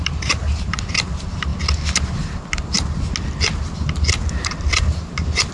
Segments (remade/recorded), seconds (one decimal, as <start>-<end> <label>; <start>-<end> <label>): 0.0-1.5 remade; 1.5-4.8 recorded; 4.8-5.5 remade